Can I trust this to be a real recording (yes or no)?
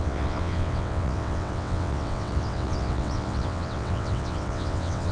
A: no